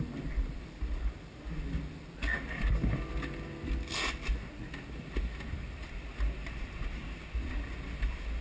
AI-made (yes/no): no